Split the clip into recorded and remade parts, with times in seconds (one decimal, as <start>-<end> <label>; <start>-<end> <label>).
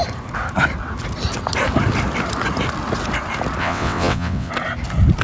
0.0-3.6 recorded; 3.6-4.5 remade; 4.5-5.2 recorded